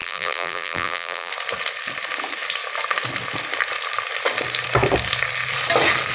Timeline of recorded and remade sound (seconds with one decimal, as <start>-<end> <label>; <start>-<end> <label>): 0.0-1.3 remade; 1.3-6.1 recorded